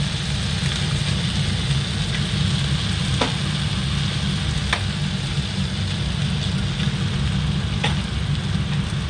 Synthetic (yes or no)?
no